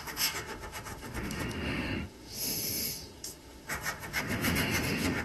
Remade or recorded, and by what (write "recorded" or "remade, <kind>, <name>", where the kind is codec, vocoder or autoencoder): remade, autoencoder, DAC-VAE